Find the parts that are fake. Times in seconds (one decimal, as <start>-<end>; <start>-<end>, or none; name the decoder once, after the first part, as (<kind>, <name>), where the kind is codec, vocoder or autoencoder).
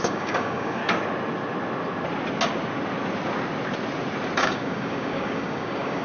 0.0-0.8 (codec, DAC); 4.4-6.0